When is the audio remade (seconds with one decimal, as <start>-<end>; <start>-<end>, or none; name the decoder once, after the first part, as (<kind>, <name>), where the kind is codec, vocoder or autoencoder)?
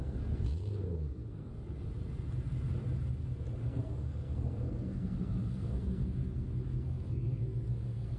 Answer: 0.0-1.5 (codec, SNAC); 3.6-8.2